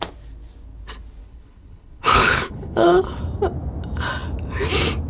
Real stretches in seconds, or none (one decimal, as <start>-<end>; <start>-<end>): 0.0-1.2; 3.2-5.1